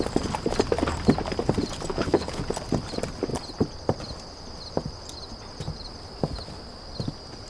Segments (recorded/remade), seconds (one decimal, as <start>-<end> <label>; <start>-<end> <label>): 0.0-1.9 recorded; 1.9-2.4 remade; 2.4-7.5 recorded

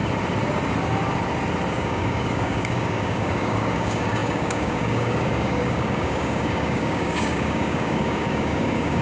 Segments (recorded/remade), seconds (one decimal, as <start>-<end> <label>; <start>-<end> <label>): 0.0-1.7 recorded; 1.7-9.0 remade

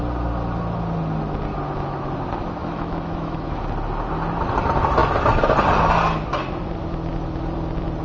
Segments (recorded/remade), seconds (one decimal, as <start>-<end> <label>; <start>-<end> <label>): 0.0-2.6 recorded; 2.6-3.6 remade; 3.6-8.0 recorded

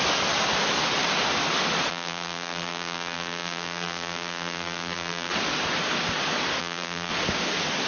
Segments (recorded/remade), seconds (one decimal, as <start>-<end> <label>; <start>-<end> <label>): 0.0-1.9 recorded; 1.9-5.3 remade; 5.3-6.6 recorded; 6.6-7.1 remade; 7.1-7.9 recorded

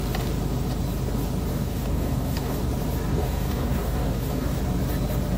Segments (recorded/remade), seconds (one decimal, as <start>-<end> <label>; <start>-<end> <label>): 0.0-1.5 recorded; 1.5-2.7 remade; 2.7-3.1 recorded; 3.1-4.6 remade; 4.6-5.4 recorded

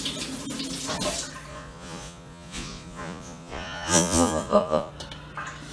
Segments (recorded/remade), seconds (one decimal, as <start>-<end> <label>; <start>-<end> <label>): 0.0-1.5 recorded; 1.5-4.9 remade; 4.9-5.7 recorded